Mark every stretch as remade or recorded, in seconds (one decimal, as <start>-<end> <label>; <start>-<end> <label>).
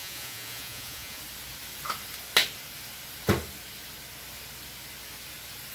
0.0-1.2 remade; 1.2-5.7 recorded